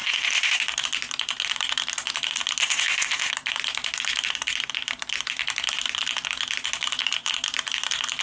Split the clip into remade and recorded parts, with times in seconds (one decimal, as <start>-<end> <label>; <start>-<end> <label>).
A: 0.0-0.6 remade; 0.6-2.6 recorded; 2.6-3.3 remade; 3.3-8.2 recorded